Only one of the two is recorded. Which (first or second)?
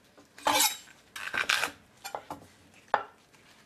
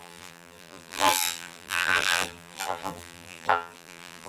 first